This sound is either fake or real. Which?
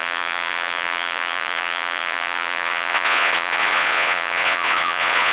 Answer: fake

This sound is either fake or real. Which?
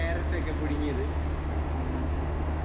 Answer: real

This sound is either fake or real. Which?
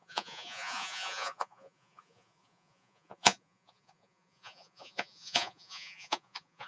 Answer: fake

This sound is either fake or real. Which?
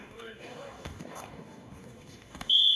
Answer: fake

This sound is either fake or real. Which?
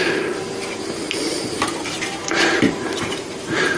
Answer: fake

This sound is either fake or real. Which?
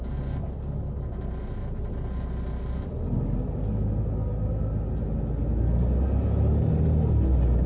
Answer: real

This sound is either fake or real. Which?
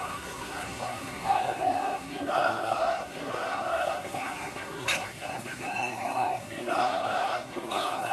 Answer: fake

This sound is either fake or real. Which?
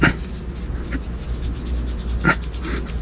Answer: real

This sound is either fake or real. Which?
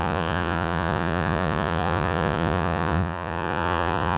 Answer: fake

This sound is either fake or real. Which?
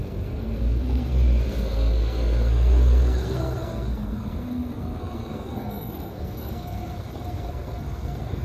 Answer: fake